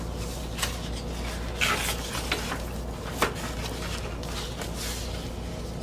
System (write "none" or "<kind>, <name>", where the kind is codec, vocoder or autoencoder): none